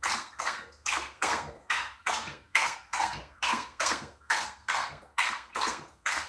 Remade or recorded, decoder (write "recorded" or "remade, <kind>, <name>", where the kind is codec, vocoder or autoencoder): remade, codec, SNAC